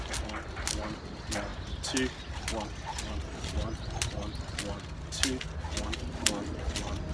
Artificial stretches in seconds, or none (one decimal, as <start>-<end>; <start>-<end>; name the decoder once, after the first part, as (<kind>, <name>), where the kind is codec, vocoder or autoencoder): none